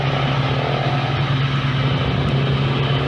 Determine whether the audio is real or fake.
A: real